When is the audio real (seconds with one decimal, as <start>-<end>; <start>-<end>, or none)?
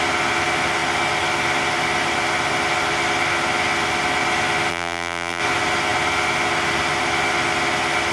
0.0-4.7; 5.4-8.1